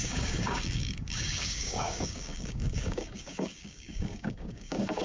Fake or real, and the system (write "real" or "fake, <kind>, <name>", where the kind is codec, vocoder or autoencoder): fake, codec, DAC